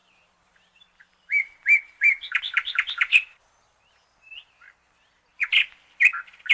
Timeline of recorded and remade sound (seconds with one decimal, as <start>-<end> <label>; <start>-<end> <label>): 0.0-3.9 remade; 3.9-6.5 recorded